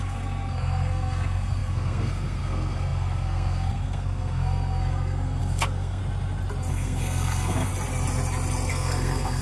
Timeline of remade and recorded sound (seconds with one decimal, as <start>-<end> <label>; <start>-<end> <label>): 0.0-6.0 remade; 6.0-6.7 recorded; 6.7-7.7 remade; 7.7-8.7 recorded; 8.7-9.4 remade